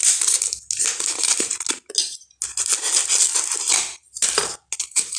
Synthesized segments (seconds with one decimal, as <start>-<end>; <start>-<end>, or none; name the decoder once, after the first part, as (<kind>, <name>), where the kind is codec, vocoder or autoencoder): none